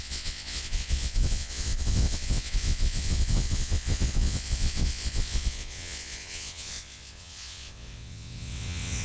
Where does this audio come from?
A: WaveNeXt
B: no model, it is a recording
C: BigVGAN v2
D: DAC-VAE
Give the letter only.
A